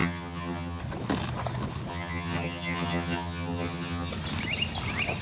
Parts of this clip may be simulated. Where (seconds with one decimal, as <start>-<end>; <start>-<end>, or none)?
0.0-0.8; 1.9-4.1